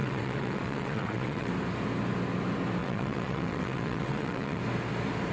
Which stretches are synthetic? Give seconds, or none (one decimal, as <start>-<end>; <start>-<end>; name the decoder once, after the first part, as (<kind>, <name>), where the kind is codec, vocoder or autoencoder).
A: 0.0-1.5 (vocoder, WaveNeXt); 2.8-4.6